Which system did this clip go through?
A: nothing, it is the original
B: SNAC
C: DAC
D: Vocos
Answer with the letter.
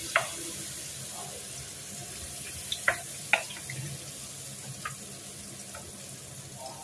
A